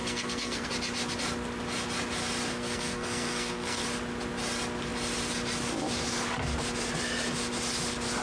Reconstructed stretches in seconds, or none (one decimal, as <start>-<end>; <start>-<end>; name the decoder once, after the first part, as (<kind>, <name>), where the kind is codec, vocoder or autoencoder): 0.0-0.7 (codec, SNAC); 2.5-3.8